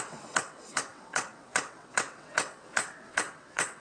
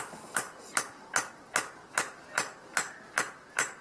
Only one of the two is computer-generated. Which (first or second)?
first